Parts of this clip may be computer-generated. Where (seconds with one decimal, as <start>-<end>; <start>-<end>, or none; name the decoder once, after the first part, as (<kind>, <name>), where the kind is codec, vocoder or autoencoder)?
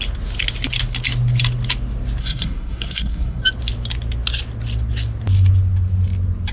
2.2-3.4 (codec, SNAC)